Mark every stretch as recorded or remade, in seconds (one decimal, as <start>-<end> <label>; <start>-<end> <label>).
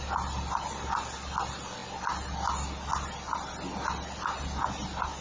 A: 0.0-5.2 recorded